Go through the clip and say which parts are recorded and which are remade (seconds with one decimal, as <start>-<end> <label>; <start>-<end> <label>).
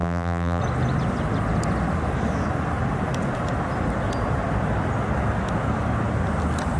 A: 0.0-0.6 remade; 0.6-6.8 recorded